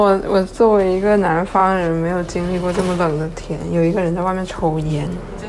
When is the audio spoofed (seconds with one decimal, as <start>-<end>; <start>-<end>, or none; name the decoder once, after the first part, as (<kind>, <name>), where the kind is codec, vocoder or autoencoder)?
none